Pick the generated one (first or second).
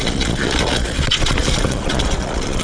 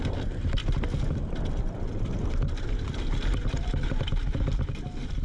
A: first